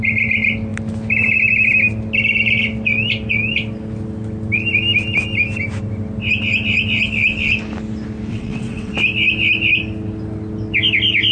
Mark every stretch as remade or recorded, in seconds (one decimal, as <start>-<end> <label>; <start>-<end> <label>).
0.0-8.3 recorded; 8.3-8.9 remade; 8.9-11.3 recorded